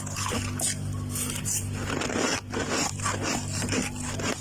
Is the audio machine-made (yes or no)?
no